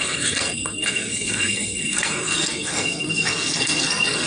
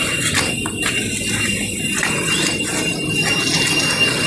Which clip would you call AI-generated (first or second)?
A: first